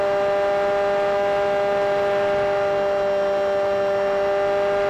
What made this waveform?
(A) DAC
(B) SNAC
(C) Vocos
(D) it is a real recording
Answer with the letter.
D